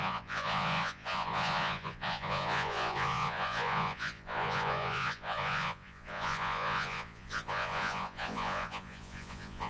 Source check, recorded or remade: remade